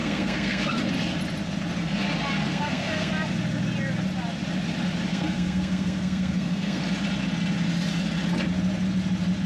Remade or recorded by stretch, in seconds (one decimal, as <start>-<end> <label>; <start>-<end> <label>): 0.0-0.6 remade; 0.6-2.5 recorded; 2.5-3.1 remade; 3.1-5.1 recorded; 5.1-6.8 remade; 6.8-9.5 recorded

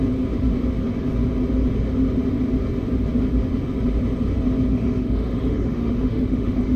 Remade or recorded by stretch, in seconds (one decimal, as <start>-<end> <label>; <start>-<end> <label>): 0.0-4.7 recorded; 4.7-6.8 remade

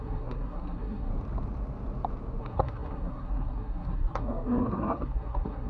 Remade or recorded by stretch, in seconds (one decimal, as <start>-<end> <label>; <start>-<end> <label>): 0.0-1.1 remade; 1.1-2.4 recorded; 2.4-5.7 remade

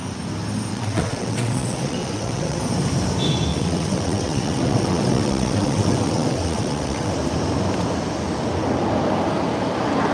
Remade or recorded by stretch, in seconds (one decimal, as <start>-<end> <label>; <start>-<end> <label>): 0.0-0.7 recorded; 0.7-2.6 remade; 2.6-3.5 recorded; 3.5-7.1 remade; 7.1-10.1 recorded